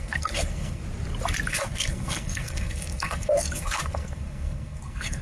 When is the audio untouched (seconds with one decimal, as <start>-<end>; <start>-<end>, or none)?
0.8-1.5